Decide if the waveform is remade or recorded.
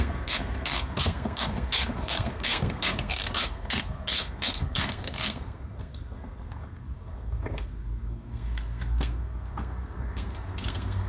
remade